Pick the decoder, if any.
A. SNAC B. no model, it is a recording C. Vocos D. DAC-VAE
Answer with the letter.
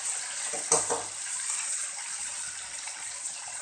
B